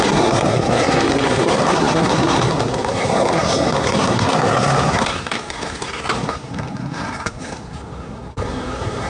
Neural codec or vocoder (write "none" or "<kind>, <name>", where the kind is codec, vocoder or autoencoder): codec, SNAC